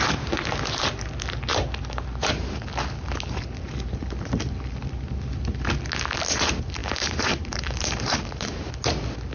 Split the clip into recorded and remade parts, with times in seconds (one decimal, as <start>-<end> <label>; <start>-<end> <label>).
0.0-1.5 recorded; 1.5-2.7 remade; 2.7-6.8 recorded; 6.8-8.7 remade; 8.7-9.3 recorded